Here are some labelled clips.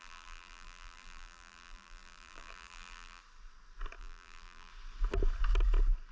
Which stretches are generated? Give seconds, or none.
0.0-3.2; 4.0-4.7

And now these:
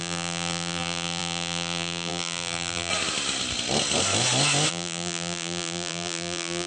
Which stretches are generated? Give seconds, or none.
0.0-2.9; 4.7-6.7

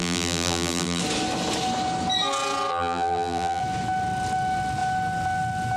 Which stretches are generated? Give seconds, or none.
0.0-1.0; 2.7-3.6

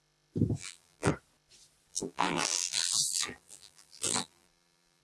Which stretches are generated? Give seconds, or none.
0.6-1.1; 1.9-5.0

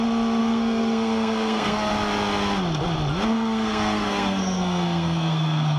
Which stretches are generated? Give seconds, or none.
0.4-1.9; 3.3-5.8

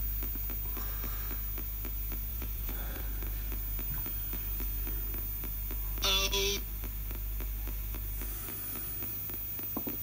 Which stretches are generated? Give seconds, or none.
2.3-3.0